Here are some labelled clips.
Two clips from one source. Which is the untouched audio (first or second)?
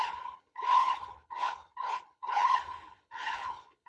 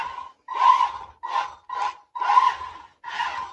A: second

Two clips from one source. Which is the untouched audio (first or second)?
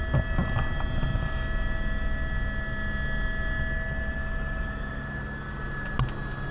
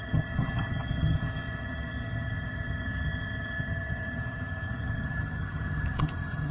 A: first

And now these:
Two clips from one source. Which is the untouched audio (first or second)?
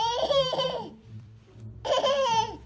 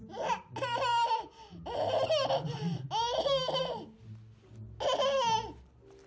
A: second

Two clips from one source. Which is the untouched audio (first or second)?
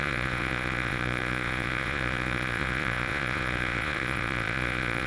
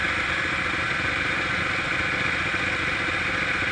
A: second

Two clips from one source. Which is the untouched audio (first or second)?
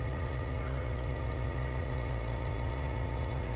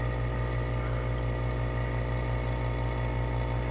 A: second